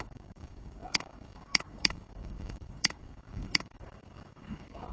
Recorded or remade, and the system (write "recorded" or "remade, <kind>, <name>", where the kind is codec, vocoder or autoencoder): remade, codec, DAC